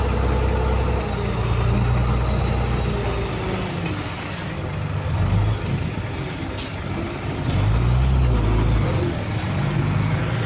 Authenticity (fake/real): real